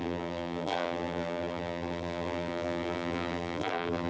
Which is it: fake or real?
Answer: fake